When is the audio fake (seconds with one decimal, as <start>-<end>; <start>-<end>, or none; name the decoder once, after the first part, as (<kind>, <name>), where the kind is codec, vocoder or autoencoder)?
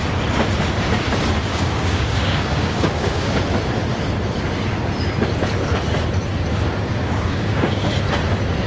1.5-3.4 (codec, DAC); 7.0-7.9